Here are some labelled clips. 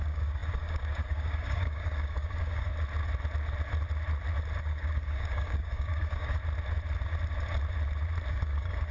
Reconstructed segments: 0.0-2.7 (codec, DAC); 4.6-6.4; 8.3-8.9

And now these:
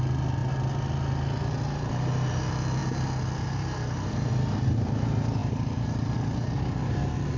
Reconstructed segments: none

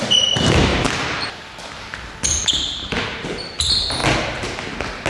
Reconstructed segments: 0.0-0.7 (vocoder, BigVGAN v2); 3.0-4.0

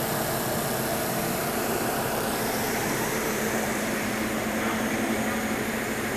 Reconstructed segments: 0.9-4.6 (vocoder, BigVGAN v2)

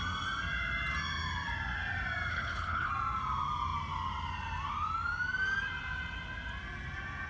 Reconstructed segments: 2.3-2.9 (codec, HILCodec)